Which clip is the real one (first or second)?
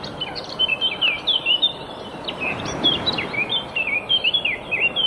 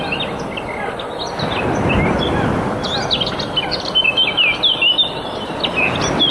second